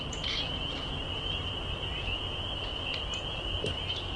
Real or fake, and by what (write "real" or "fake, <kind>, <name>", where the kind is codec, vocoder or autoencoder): real